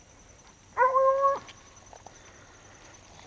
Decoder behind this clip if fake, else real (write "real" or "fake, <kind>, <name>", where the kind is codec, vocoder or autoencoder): real